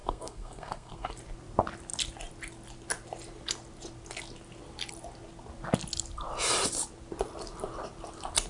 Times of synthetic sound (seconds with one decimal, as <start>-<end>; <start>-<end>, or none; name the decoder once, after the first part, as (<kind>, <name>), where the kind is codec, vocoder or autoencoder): 0.0-1.1 (codec, SNAC)